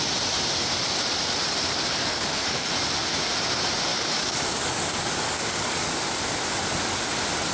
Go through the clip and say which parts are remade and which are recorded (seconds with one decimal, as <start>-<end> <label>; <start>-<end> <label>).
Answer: 0.0-2.0 recorded; 2.0-2.7 remade; 2.7-3.9 recorded; 3.9-5.9 remade; 5.9-7.5 recorded